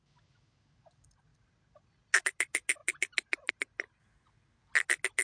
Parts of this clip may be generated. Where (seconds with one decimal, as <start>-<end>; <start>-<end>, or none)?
none